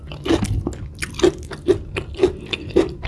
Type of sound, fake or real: real